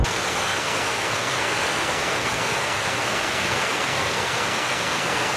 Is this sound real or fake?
fake